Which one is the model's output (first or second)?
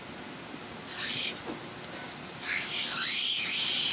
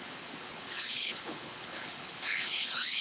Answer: second